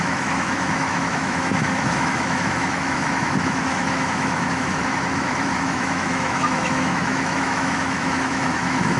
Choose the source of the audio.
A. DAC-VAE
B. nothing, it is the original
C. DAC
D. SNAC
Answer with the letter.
A